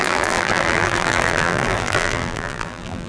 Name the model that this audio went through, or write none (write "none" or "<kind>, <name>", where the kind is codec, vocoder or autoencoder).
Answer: vocoder, BigVGAN v2